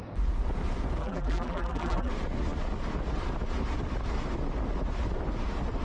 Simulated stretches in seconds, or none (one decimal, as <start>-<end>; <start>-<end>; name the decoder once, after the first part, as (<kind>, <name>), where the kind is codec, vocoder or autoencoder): 1.0-2.1 (vocoder, BigVGAN v2)